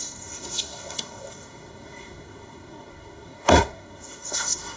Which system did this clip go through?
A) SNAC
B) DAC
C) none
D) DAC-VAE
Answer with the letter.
A